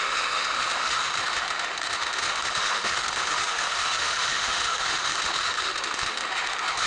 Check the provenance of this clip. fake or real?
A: fake